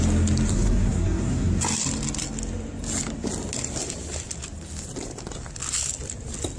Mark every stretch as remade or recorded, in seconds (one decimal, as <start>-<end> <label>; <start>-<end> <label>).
0.0-0.5 recorded; 0.5-1.6 remade; 1.6-6.6 recorded

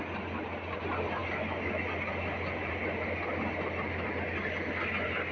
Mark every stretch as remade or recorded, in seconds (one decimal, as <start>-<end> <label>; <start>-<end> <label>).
0.0-5.3 recorded

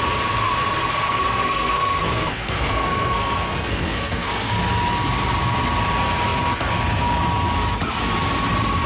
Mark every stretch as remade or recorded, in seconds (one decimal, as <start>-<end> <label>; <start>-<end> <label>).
0.0-0.6 recorded; 0.6-4.6 remade; 4.6-8.9 recorded

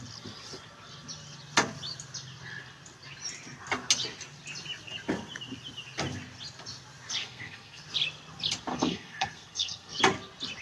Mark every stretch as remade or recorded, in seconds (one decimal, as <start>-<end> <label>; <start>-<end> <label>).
0.0-7.2 recorded; 7.2-7.8 remade; 7.8-8.7 recorded; 8.7-10.0 remade; 10.0-10.6 recorded

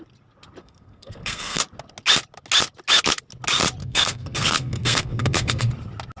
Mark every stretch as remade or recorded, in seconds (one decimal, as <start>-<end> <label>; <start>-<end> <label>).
0.0-0.6 recorded; 0.6-1.6 remade; 1.6-3.8 recorded; 3.8-5.7 remade; 5.7-6.2 recorded

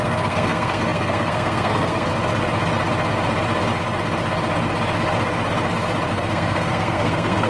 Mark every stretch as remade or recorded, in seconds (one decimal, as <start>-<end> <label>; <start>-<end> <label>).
0.0-2.1 remade; 2.1-6.1 recorded; 6.1-7.5 remade